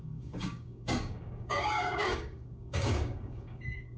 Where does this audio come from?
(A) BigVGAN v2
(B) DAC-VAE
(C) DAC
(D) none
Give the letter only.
C